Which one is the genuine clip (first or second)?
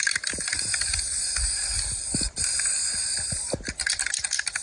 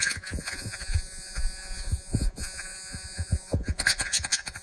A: first